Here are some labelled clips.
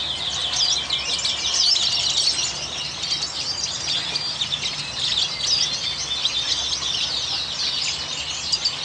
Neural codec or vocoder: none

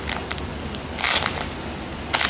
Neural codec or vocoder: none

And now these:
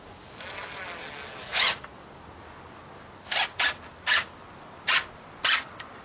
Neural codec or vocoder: none